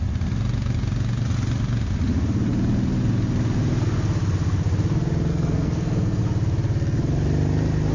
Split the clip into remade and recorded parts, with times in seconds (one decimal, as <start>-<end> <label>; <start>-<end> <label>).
0.0-5.3 recorded; 5.3-6.2 remade; 6.2-7.9 recorded